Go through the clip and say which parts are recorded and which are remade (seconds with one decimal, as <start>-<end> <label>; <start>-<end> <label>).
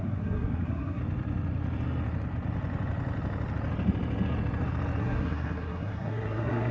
0.0-1.0 remade; 1.0-5.0 recorded; 5.0-6.7 remade